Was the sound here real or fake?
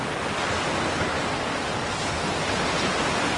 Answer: real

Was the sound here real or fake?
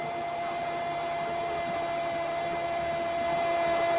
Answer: real